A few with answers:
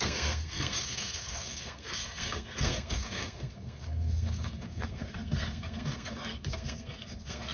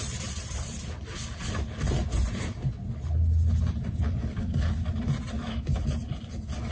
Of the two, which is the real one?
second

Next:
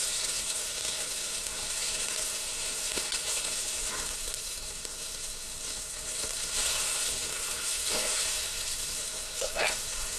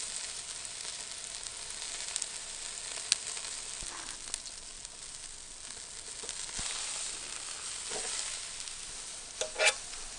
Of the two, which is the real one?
second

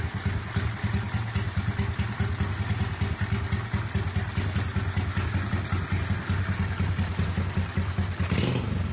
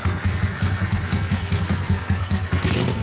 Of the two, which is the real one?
first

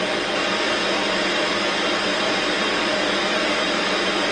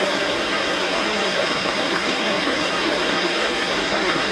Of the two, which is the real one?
first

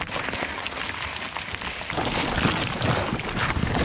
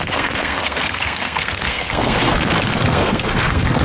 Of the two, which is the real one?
first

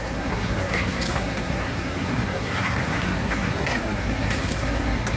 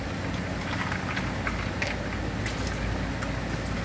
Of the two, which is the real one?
second